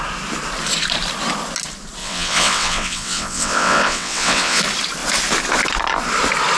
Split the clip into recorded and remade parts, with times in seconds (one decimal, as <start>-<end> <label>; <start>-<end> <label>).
0.0-2.0 recorded; 2.0-4.6 remade; 4.6-6.6 recorded